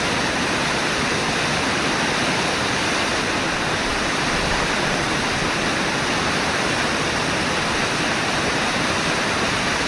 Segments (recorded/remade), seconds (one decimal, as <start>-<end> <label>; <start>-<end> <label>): 0.0-3.1 remade; 3.1-3.9 recorded; 3.9-9.9 remade